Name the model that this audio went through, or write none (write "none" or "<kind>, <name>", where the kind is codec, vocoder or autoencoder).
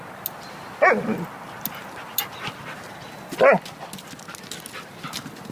none